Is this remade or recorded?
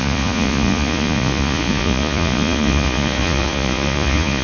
remade